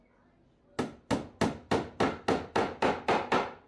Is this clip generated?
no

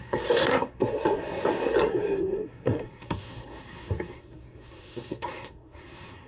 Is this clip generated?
yes